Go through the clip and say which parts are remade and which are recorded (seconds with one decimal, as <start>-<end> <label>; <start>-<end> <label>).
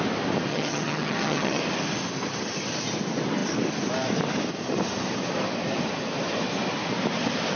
0.0-0.5 recorded; 0.5-1.6 remade; 1.6-7.6 recorded